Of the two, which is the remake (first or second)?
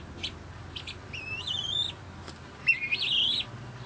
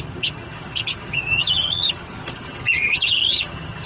second